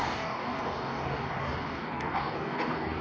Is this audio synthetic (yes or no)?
yes